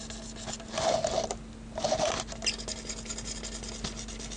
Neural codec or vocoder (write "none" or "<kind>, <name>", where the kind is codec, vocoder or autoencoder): none